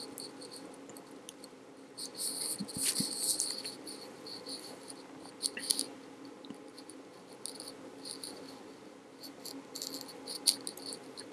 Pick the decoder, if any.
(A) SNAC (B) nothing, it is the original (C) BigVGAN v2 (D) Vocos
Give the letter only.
B